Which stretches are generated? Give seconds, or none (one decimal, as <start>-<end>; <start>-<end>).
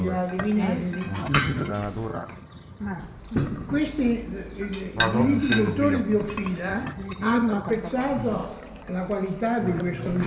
1.2-1.7; 2.1-3.0; 6.7-7.7